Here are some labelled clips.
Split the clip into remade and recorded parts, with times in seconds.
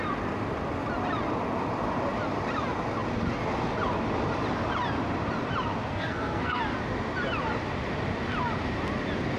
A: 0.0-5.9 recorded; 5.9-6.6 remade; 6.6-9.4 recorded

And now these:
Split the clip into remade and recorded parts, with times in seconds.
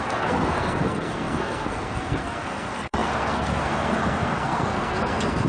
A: 0.0-5.5 remade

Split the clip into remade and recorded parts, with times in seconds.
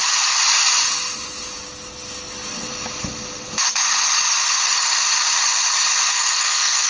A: 0.0-6.1 recorded; 6.1-6.9 remade